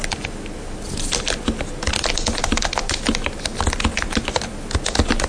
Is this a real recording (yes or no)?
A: yes